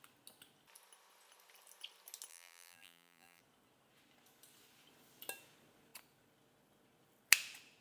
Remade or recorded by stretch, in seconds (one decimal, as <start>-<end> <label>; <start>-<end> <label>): 0.0-2.3 recorded; 2.3-3.4 remade; 3.4-7.8 recorded